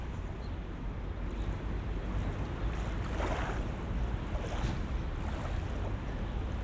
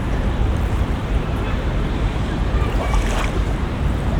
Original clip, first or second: first